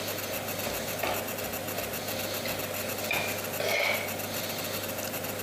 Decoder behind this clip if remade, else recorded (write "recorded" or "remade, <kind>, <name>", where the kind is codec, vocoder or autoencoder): recorded